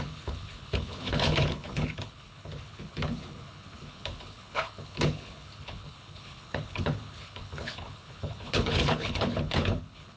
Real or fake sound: fake